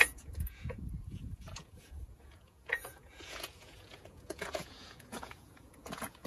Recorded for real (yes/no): no